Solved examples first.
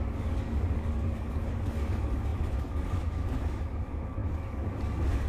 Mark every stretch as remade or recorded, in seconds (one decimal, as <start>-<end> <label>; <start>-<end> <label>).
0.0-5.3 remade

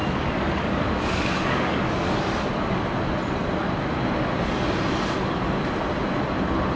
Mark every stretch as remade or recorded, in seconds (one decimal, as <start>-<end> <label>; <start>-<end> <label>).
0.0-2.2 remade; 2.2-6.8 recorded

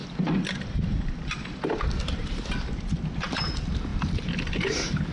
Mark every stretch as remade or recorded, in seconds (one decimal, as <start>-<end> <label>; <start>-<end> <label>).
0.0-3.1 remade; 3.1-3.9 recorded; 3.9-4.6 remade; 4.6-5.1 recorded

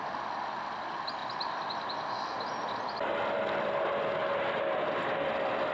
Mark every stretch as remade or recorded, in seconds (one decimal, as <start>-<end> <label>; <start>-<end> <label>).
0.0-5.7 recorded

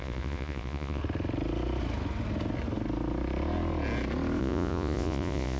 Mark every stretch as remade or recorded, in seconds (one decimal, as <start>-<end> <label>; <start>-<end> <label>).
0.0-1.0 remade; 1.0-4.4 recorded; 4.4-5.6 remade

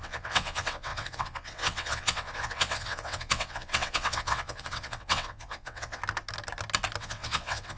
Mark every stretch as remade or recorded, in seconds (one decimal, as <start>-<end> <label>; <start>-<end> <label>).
0.0-6.0 remade; 6.0-7.0 recorded; 7.0-7.8 remade

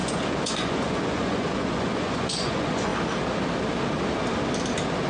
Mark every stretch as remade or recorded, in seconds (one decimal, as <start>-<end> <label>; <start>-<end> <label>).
0.0-2.9 remade; 2.9-5.1 recorded